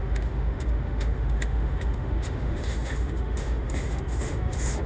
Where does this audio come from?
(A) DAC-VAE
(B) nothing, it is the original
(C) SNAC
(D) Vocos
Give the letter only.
A